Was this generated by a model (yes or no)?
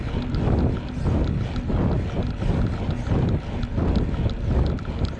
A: no